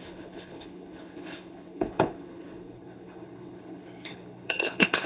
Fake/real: fake